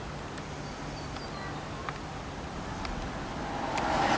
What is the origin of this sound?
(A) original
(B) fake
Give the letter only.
A